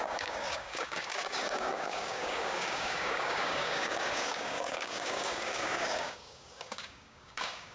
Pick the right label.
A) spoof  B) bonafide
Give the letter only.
A